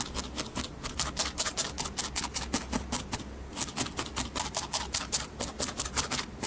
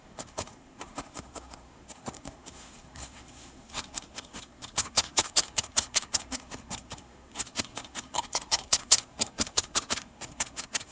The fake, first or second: second